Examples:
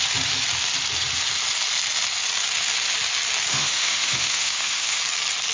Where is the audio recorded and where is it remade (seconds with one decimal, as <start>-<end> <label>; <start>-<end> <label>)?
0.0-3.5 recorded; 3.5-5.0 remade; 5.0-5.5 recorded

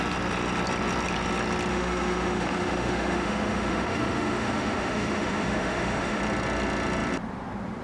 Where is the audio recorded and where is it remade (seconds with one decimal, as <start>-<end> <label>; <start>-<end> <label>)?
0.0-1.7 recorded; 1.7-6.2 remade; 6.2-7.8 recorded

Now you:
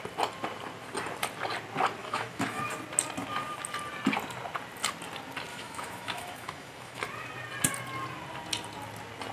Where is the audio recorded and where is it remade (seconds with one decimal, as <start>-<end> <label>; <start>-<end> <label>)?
0.0-2.0 recorded; 2.0-2.6 remade; 2.6-5.5 recorded; 5.5-7.0 remade; 7.0-9.3 recorded

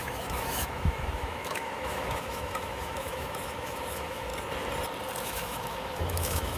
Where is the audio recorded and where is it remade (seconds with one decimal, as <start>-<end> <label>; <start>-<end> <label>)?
0.0-4.3 remade; 4.3-5.2 recorded; 5.2-6.6 remade

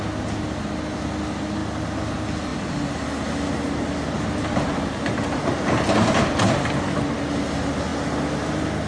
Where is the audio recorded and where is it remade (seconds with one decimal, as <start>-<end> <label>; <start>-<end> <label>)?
0.0-8.9 recorded